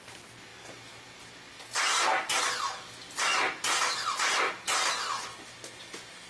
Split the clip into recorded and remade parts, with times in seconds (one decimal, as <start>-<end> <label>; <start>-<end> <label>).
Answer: 0.0-6.3 recorded